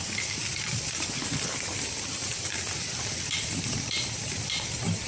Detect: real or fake fake